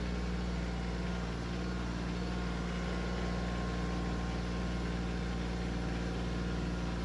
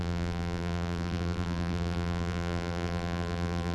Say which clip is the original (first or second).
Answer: first